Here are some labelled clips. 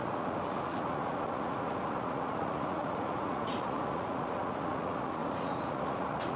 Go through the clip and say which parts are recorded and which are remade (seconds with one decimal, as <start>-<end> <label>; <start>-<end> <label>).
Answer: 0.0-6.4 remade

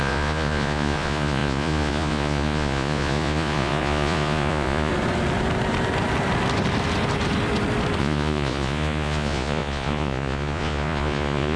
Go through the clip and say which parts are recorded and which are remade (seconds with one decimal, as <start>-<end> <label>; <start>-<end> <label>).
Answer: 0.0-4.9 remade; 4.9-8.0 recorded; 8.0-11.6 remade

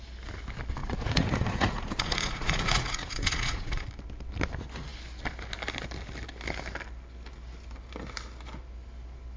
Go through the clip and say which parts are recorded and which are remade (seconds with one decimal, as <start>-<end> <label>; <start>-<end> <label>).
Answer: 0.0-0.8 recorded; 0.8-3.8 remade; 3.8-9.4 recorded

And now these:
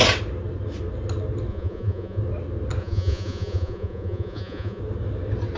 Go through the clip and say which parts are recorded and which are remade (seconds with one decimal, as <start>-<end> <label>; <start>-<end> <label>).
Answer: 0.0-1.5 recorded; 1.5-2.2 remade; 2.2-2.8 recorded; 2.8-4.8 remade; 4.8-5.6 recorded

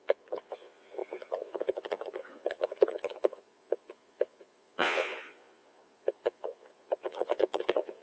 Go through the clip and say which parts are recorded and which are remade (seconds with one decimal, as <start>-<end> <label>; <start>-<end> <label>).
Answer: 0.0-8.0 remade